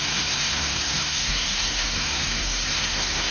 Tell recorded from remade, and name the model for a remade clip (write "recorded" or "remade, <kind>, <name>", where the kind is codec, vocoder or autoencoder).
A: remade, codec, SNAC